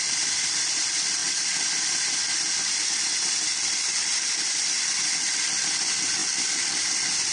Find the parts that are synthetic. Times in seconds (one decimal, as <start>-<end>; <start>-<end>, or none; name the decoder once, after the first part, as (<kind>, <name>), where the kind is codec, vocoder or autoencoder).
none